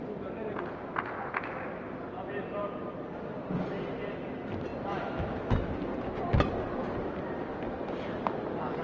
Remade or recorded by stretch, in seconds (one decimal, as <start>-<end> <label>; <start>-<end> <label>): 0.0-8.8 recorded